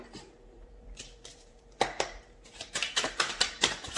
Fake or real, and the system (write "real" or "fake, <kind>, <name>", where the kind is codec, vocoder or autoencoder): fake, vocoder, BigVGAN v2